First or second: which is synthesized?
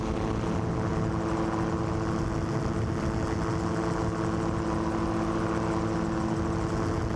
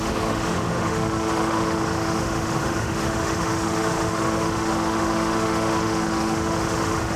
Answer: second